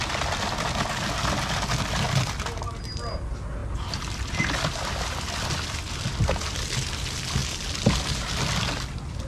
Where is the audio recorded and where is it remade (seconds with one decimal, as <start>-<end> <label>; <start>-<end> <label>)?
0.0-9.3 recorded